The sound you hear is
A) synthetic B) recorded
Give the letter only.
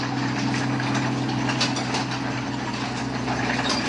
B